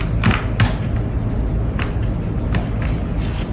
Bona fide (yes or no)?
yes